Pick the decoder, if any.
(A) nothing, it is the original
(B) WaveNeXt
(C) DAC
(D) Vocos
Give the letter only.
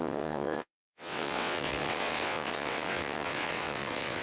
B